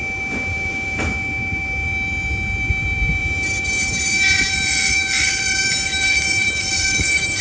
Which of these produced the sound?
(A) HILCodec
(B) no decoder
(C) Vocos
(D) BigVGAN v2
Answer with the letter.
D